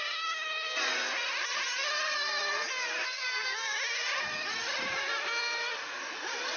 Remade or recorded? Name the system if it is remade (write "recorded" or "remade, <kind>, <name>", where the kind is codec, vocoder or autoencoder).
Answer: recorded